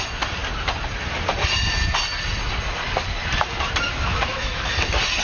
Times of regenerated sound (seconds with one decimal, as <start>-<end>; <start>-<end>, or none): 4.1-4.7